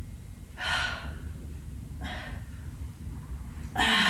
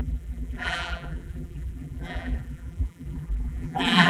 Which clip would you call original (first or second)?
first